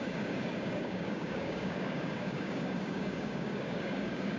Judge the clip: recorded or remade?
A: remade